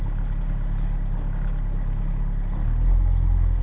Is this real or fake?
real